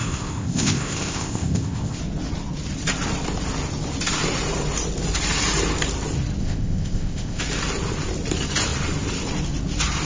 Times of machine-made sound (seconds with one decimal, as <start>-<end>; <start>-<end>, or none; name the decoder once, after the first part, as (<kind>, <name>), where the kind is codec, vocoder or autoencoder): 0.0-2.0 (codec, ZipCodec); 6.4-7.4